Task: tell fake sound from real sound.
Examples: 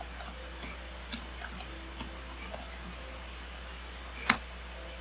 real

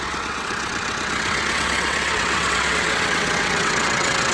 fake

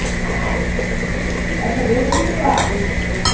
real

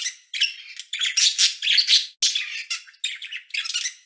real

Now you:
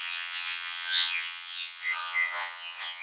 fake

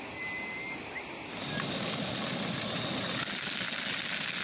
real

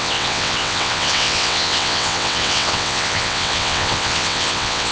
fake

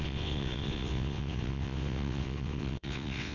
fake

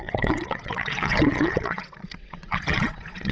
fake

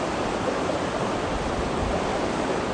real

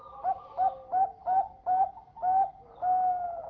real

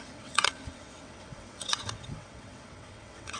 fake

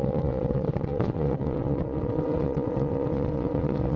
fake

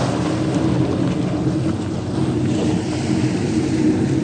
real